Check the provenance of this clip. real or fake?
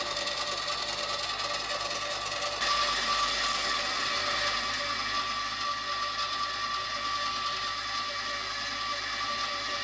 real